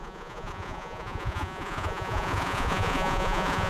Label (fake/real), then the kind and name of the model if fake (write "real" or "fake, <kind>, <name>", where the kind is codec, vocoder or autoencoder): fake, vocoder, Vocos